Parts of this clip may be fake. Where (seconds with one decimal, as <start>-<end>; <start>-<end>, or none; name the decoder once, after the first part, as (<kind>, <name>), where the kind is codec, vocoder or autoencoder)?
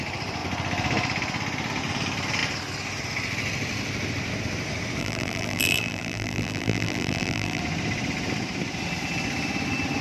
5.0-7.6 (vocoder, BigVGAN v2)